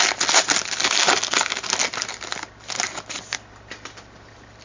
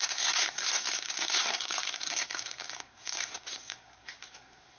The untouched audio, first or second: first